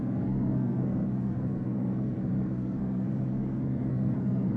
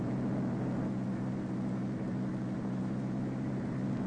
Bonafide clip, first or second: second